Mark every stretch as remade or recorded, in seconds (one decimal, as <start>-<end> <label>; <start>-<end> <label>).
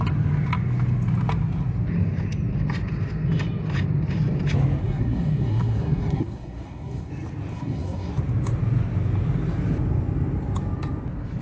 0.0-4.8 recorded; 4.8-7.1 remade; 7.1-7.5 recorded; 7.5-8.1 remade; 8.1-11.4 recorded